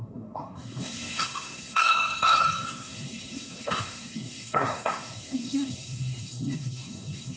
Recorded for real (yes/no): no